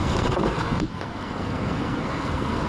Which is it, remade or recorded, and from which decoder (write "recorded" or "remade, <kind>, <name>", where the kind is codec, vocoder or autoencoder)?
remade, codec, SNAC